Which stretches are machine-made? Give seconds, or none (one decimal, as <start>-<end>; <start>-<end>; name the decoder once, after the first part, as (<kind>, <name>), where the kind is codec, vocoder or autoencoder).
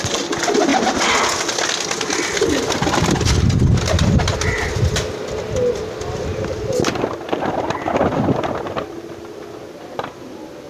none